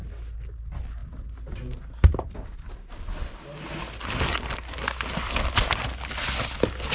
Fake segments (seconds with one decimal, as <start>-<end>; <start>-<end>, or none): none